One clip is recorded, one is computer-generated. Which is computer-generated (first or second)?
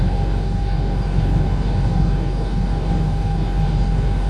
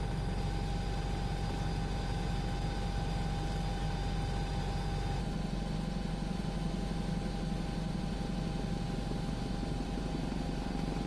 first